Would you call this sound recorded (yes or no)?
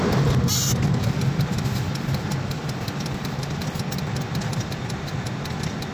yes